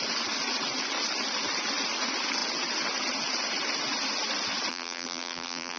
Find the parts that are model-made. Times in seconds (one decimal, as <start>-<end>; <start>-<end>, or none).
4.7-5.8

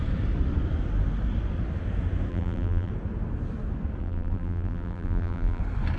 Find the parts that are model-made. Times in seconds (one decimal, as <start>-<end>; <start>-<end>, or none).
2.3-2.9; 4.0-5.6

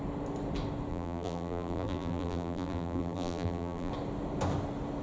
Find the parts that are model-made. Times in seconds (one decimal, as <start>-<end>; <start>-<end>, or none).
0.9-3.9

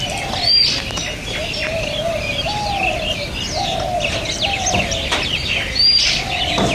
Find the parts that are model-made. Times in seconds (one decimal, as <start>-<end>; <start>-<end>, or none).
none

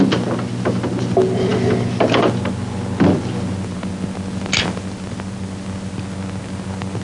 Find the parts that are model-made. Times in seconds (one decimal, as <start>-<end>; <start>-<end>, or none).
none

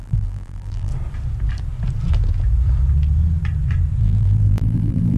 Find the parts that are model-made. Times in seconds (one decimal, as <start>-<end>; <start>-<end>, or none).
0.0-0.9; 4.0-5.2